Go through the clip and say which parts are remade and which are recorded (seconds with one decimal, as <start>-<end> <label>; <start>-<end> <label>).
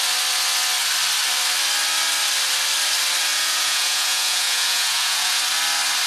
0.0-3.3 recorded; 3.3-5.4 remade; 5.4-6.1 recorded